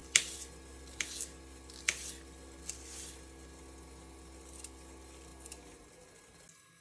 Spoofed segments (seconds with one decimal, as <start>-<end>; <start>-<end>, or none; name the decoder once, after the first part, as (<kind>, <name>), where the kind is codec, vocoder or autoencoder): none